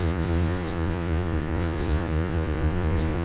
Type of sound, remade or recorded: remade